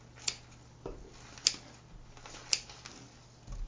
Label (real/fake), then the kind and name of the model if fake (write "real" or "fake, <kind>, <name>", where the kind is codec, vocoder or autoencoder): real